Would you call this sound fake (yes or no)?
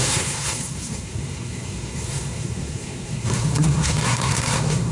yes